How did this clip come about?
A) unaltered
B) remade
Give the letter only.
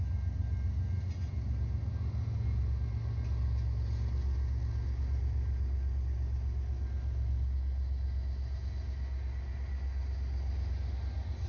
A